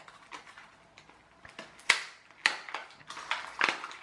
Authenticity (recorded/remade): recorded